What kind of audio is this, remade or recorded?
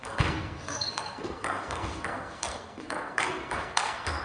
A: remade